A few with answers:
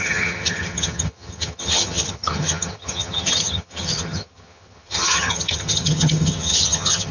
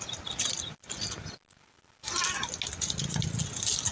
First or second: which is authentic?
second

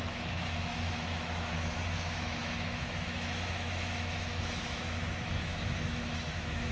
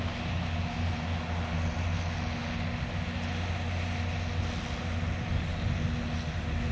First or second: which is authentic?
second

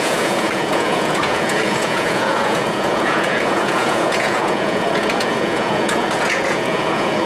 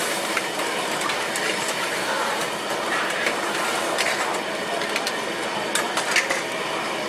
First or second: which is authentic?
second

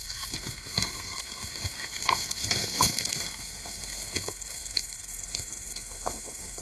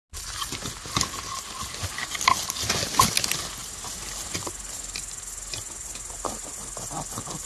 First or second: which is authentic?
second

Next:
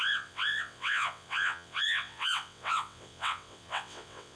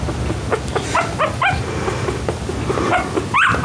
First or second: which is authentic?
second